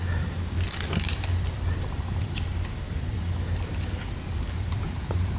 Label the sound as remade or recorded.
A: remade